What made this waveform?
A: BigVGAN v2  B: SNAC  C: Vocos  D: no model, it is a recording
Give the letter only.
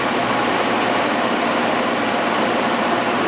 A